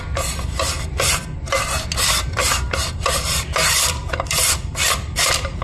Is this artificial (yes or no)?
no